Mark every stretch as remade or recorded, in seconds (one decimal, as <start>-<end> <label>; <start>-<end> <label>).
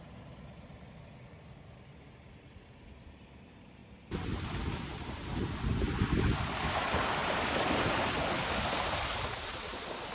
0.0-10.1 recorded